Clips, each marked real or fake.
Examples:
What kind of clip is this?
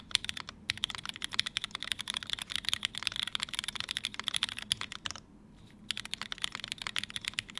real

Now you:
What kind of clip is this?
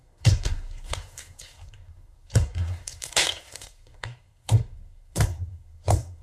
fake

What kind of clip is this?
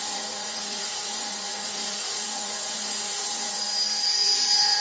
fake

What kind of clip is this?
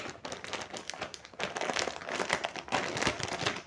real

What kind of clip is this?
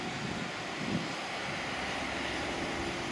real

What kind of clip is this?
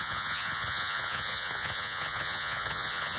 fake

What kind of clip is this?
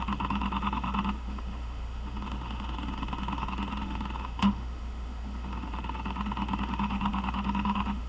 fake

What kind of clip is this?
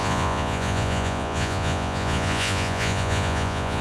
fake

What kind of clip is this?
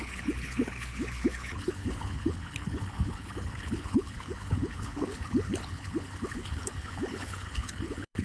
fake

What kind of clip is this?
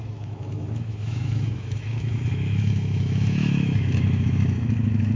fake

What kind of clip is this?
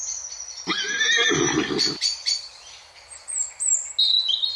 real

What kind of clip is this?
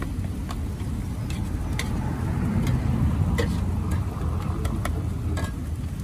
real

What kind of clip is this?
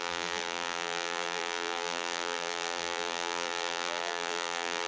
fake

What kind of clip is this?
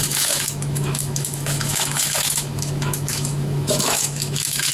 fake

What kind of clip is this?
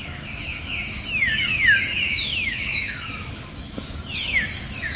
fake